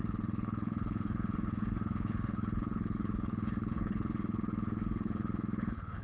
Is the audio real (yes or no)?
no